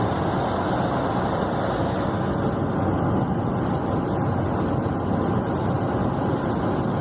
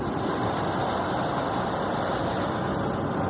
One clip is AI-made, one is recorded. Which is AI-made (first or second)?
second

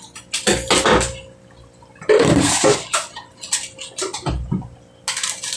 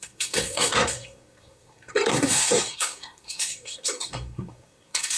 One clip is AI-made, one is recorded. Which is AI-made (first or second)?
second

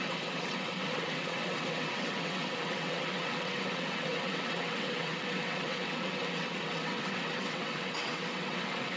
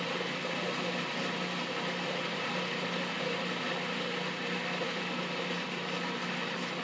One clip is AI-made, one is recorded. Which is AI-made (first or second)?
first